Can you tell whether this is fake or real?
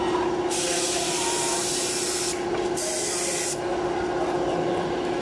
real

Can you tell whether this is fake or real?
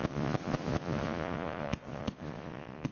fake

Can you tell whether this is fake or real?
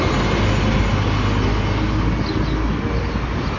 real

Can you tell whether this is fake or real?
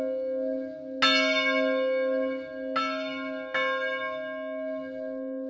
real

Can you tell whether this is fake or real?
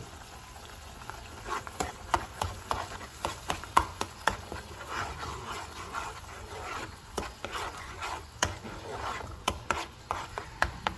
fake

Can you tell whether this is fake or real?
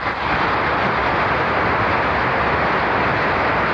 real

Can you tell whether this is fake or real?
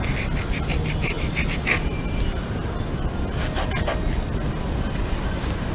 real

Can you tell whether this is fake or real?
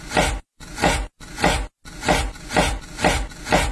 real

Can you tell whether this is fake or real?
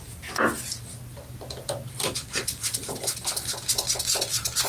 real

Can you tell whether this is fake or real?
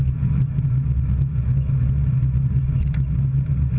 real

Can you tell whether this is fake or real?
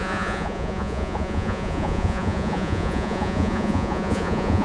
fake